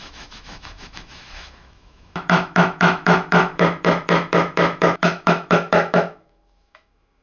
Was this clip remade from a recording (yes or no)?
yes